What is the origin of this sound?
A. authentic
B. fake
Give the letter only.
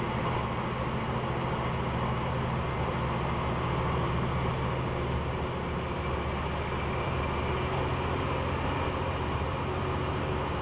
A